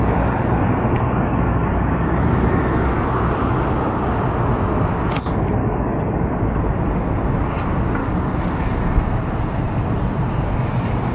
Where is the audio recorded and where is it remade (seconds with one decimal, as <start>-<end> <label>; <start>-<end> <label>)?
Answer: 0.0-4.0 remade; 4.0-5.6 recorded; 5.6-6.3 remade; 6.3-8.0 recorded; 8.0-8.7 remade; 8.7-11.1 recorded